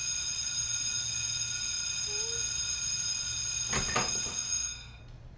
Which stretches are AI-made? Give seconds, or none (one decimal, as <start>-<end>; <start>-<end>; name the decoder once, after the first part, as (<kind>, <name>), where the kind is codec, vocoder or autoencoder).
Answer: 4.3-5.0 (autoencoder, DAC-VAE)